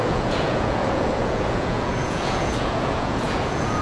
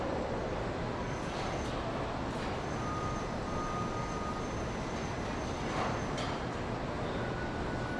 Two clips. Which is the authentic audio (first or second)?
second